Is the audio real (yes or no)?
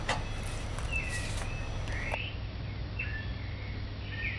yes